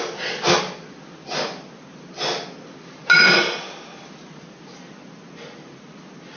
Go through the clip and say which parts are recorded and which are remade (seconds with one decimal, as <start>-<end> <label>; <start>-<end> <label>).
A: 0.0-6.4 recorded